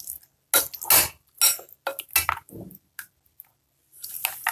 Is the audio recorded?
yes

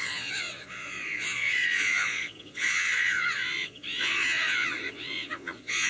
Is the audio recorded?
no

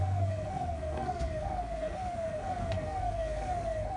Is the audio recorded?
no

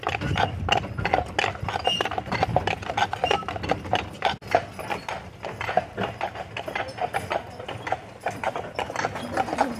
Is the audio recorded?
yes